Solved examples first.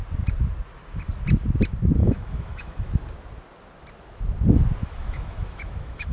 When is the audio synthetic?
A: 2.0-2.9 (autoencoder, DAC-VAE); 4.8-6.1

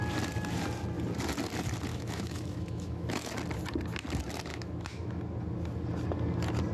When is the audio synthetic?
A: 1.9-3.3 (autoencoder, DAC-VAE); 4.5-5.2

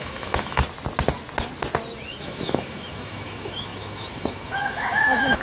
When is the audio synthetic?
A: 0.0-0.6 (autoencoder, DAC-VAE); 2.2-5.4

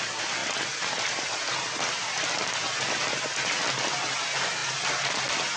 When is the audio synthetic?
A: none

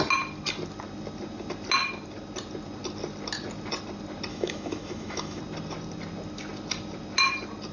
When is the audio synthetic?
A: 4.3-5.4 (autoencoder, DAC-VAE)

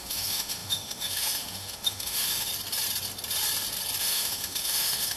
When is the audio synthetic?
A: 0.0-2.5 (autoencoder, DAC-VAE); 4.0-5.2

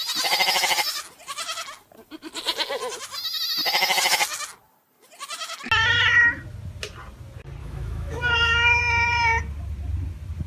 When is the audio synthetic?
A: 7.6-8.8 (autoencoder, DAC-VAE)